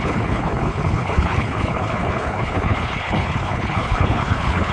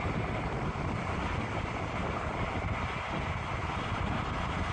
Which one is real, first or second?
second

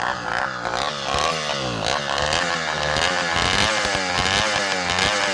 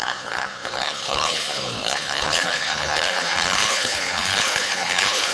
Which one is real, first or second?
first